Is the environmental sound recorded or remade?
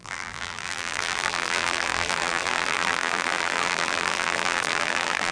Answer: remade